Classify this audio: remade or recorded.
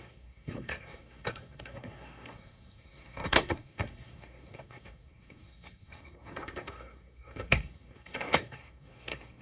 remade